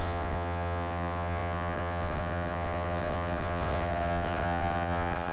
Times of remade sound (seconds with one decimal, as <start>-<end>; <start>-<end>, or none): 0.0-5.3